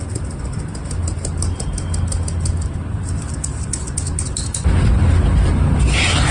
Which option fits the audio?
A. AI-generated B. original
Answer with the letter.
B